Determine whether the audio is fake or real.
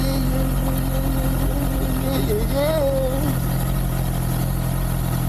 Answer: real